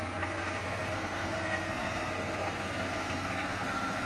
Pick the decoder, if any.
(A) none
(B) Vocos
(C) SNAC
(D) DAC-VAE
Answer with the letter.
C